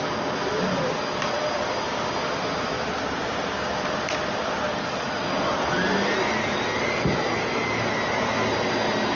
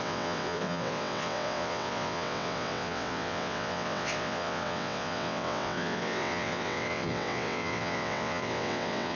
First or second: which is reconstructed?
second